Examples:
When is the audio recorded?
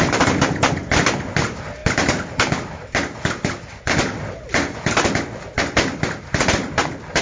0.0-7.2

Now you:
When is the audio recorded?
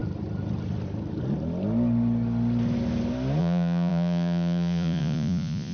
0.0-3.4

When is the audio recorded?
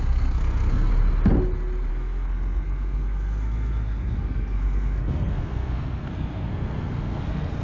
0.9-1.9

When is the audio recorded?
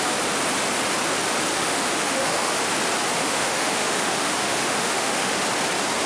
0.0-1.5; 2.5-3.2; 5.4-6.1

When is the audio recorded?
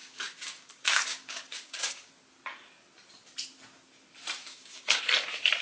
2.1-4.4; 5.0-5.6